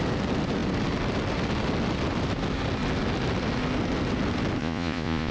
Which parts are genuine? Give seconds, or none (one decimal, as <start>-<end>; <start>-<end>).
0.0-4.6